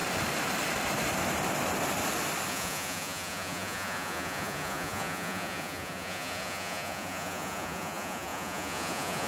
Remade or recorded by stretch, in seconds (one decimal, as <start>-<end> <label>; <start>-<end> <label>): 0.0-2.5 recorded; 2.5-9.3 remade